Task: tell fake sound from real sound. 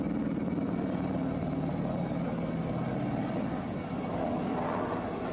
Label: real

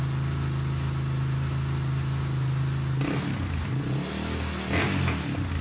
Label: real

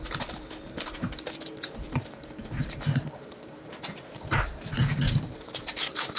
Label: fake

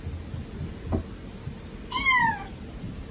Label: real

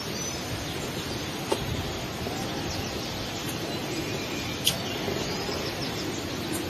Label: real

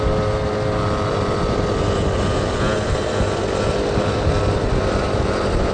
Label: real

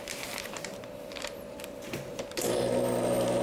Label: fake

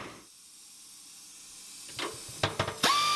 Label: real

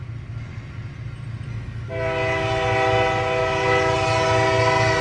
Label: real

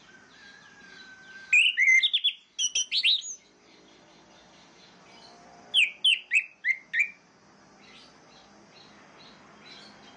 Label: real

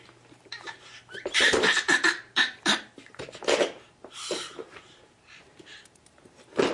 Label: fake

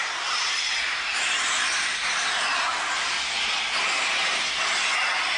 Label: real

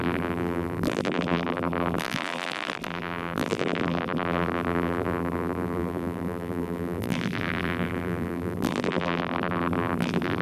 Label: fake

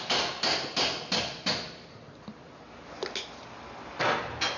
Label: real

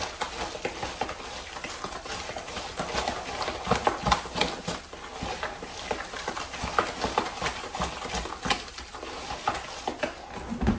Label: real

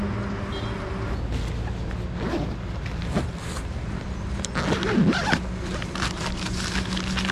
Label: real